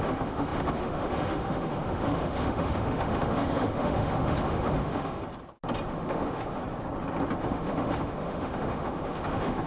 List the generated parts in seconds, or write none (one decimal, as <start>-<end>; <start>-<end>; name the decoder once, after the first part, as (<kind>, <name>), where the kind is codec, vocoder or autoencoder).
0.0-5.2 (autoencoder, DAC-VAE); 5.9-6.6; 7.4-9.7